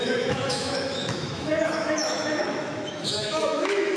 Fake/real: fake